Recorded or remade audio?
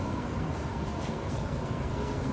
remade